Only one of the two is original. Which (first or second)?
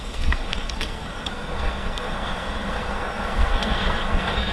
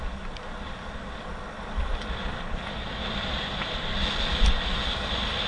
second